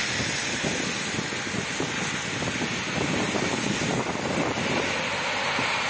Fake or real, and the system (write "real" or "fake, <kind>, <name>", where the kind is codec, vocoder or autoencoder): real